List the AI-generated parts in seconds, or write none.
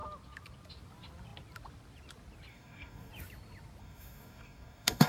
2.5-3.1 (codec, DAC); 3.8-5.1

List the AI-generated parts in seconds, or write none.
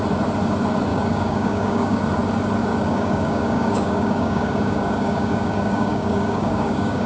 0.9-2.0 (codec, DAC); 2.6-7.1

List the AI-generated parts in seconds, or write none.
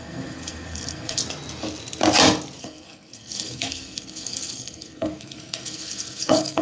0.0-1.2 (codec, SNAC); 2.6-6.6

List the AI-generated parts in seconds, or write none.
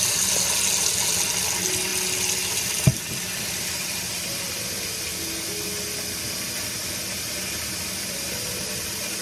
none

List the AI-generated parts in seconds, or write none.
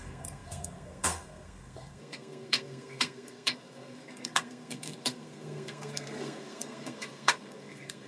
0.0-8.1 (codec, SNAC)